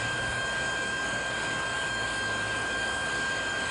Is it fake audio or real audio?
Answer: fake